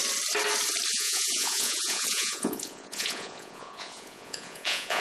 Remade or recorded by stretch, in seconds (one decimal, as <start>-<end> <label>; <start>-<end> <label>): 0.0-0.9 recorded; 0.9-5.0 remade

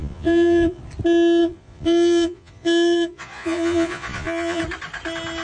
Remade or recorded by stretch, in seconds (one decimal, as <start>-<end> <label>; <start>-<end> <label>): 0.0-0.8 remade; 0.8-1.4 recorded; 1.4-4.6 remade; 4.6-5.4 recorded

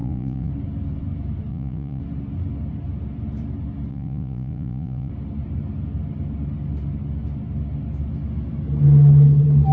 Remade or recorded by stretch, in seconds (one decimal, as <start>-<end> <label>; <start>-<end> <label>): 0.0-0.5 remade; 0.5-1.5 recorded; 1.5-2.0 remade; 2.0-3.9 recorded; 3.9-5.1 remade; 5.1-9.7 recorded

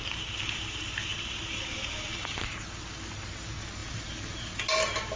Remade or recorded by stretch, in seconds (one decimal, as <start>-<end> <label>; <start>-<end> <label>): 0.0-5.2 recorded

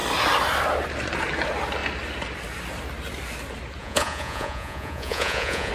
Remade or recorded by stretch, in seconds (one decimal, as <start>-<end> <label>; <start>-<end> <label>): 0.0-3.8 recorded; 3.8-5.7 remade

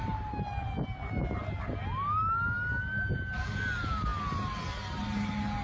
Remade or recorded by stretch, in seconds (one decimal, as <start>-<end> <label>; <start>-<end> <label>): 0.0-5.6 recorded

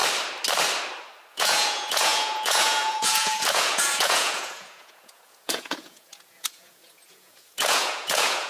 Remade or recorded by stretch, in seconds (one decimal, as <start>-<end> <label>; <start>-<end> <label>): 0.0-1.3 recorded; 1.3-8.5 remade

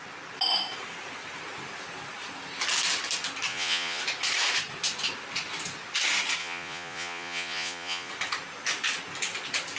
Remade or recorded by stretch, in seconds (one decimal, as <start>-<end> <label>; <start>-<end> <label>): 0.0-3.5 recorded; 3.5-4.0 remade; 4.0-6.4 recorded; 6.4-8.1 remade; 8.1-9.8 recorded